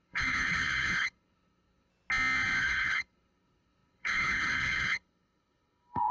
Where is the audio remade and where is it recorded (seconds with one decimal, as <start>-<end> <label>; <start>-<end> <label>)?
0.0-1.9 remade; 1.9-2.6 recorded; 2.6-6.1 remade